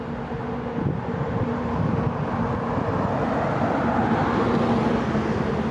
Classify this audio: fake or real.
real